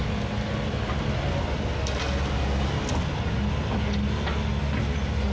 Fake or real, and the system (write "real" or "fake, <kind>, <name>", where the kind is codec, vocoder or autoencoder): real